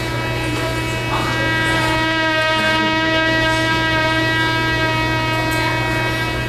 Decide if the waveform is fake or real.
real